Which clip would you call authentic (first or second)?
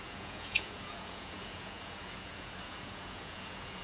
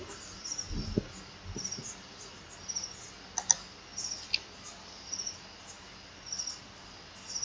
second